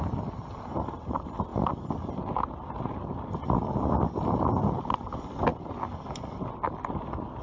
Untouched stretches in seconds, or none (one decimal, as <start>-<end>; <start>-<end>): 0.0-7.4